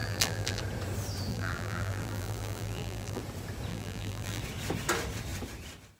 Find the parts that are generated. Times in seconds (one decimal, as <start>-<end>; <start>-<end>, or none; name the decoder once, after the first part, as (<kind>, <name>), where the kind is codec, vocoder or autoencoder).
0.0-0.6 (vocoder, BigVGAN v2); 1.3-3.2; 3.7-4.4